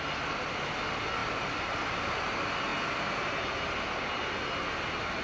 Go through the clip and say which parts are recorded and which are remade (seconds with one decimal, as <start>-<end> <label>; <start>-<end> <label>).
0.0-1.2 recorded; 1.2-2.3 remade; 2.3-5.2 recorded